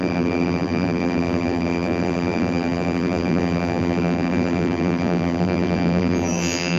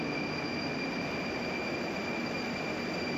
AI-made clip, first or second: first